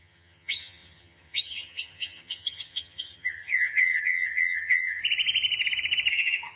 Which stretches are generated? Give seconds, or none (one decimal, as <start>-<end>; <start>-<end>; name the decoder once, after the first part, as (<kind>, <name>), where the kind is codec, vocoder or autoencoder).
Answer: 0.0-5.0 (vocoder, HiFi-GAN); 6.1-6.6